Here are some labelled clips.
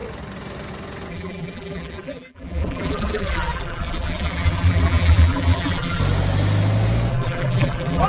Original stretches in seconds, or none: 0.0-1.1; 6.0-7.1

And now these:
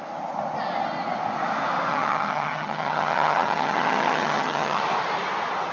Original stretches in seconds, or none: 0.0-1.9; 4.8-5.7

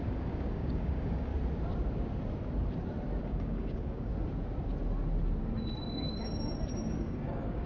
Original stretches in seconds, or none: 1.3-3.2; 4.1-7.0

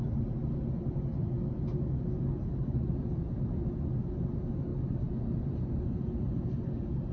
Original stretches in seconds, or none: 0.0-7.1

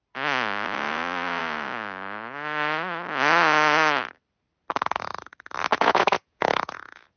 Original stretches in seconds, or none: 0.0-5.7

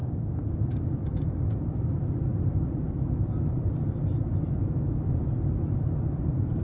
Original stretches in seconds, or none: 1.9-6.6

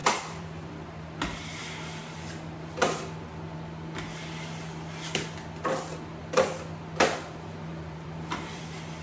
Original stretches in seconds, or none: 0.7-7.7; 8.6-9.0

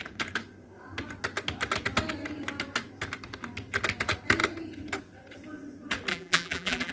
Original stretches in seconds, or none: 0.0-6.1